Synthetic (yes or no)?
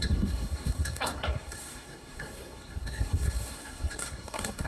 yes